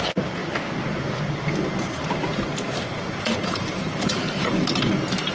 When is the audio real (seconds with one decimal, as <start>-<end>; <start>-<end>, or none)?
0.4-2.8